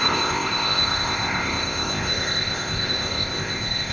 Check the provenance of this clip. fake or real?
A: fake